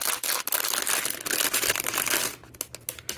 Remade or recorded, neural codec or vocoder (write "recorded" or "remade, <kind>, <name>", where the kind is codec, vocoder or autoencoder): recorded